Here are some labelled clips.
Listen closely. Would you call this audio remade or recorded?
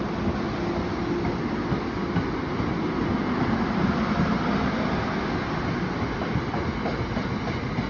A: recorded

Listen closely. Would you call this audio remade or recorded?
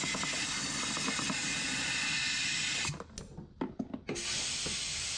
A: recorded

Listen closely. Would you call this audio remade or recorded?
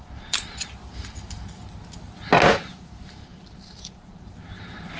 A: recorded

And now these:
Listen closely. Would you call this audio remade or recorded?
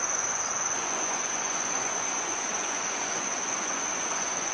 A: remade